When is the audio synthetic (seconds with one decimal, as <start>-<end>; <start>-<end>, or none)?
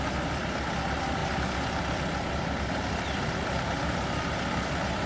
none